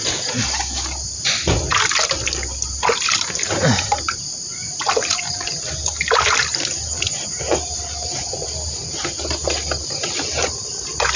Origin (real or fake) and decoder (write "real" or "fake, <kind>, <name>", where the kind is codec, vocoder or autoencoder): real